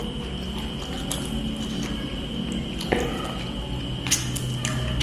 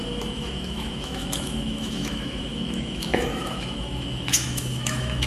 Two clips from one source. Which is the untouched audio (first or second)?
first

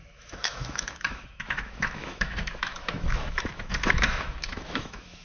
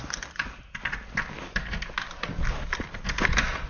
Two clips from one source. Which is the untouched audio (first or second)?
second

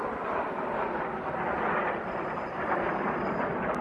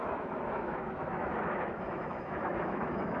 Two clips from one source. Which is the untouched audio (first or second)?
first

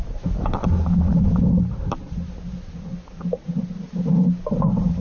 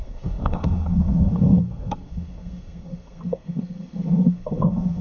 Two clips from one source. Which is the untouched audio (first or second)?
first